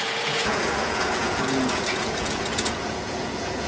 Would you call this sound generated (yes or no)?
yes